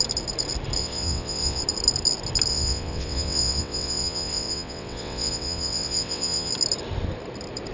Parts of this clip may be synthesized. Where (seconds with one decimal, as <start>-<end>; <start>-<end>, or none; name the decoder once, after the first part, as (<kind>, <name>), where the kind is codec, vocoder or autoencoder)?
0.8-1.6 (vocoder, WaveNeXt); 2.5-6.5